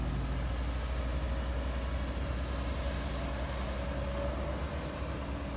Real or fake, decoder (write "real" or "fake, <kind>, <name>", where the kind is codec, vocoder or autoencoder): real